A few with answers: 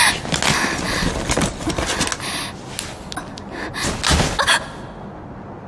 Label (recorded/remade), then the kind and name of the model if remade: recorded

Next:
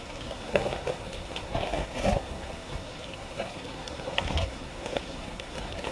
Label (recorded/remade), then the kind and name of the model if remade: remade, codec, SNAC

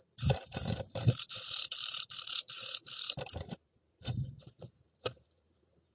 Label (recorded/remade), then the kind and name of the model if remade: remade, vocoder, BigVGAN v2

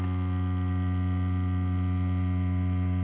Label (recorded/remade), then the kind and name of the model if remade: recorded